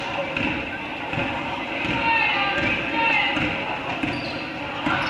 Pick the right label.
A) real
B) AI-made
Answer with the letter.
A